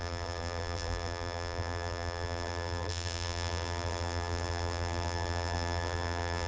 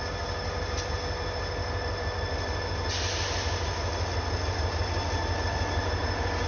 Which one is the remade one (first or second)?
first